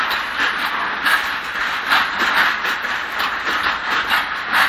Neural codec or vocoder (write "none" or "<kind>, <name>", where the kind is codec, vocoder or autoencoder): none